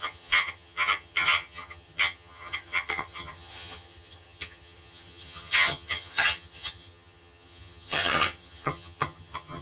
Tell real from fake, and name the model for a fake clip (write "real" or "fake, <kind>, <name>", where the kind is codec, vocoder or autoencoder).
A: fake, vocoder, HiFi-GAN